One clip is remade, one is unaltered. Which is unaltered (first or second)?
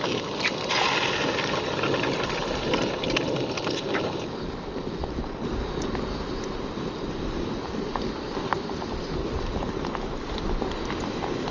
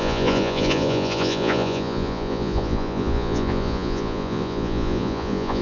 first